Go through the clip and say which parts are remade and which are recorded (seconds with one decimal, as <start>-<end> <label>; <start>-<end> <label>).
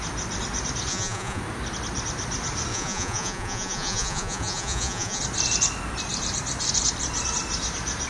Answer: 0.0-0.9 recorded; 0.9-1.4 remade; 1.4-2.7 recorded; 2.7-5.2 remade; 5.2-8.1 recorded